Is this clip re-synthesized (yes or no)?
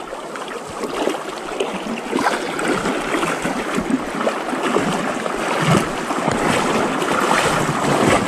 no